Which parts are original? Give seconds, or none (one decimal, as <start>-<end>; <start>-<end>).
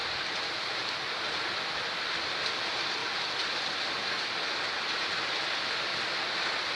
1.4-3.0; 3.7-5.9